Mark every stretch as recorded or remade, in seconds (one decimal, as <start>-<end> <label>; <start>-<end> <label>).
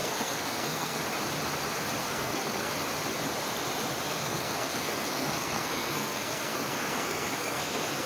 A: 0.0-1.0 remade; 1.0-2.0 recorded; 2.0-2.7 remade; 2.7-4.1 recorded; 4.1-8.1 remade